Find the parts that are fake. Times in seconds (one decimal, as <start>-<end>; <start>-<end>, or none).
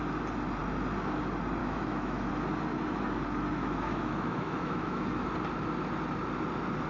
1.6-2.3; 3.6-5.3